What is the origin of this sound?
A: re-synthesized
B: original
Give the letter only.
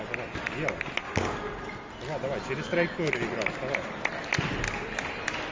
B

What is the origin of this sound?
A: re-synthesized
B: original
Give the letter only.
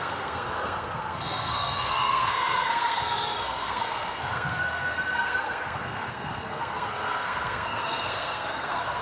A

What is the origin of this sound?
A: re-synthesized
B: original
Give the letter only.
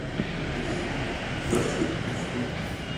B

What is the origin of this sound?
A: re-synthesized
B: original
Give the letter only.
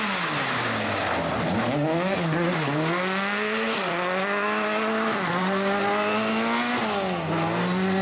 B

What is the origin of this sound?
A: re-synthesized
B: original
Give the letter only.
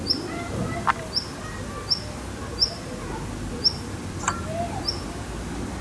B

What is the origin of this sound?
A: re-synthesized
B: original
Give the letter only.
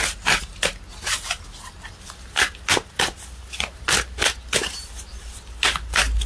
B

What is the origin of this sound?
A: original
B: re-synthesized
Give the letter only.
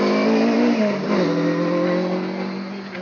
A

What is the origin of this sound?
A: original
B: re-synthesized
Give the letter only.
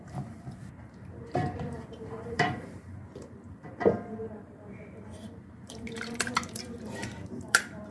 B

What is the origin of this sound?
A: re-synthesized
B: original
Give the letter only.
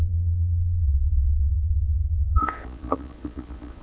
A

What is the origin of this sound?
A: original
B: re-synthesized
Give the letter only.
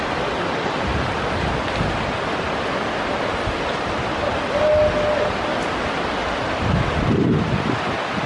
A